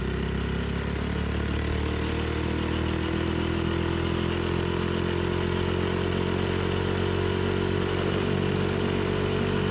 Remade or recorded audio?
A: recorded